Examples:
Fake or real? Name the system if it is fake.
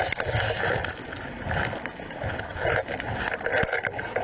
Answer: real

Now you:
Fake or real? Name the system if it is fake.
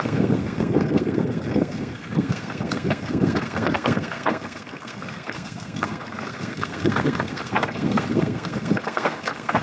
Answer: fake, codec, SNAC